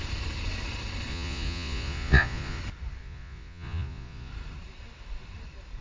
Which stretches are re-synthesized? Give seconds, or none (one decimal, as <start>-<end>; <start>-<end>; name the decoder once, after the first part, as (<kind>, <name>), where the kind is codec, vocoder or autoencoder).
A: 1.1-2.6 (vocoder, Vocos); 3.0-4.3